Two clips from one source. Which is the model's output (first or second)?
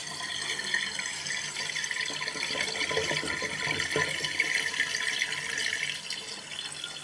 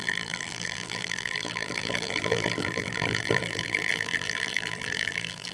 second